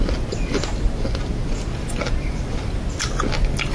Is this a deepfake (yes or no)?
no